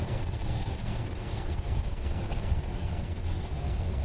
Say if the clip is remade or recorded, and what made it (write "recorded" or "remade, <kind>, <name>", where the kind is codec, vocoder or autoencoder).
remade, codec, SNAC